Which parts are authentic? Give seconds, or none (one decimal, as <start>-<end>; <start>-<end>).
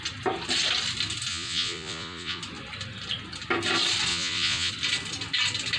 0.0-1.3; 2.4-4.1; 4.7-5.8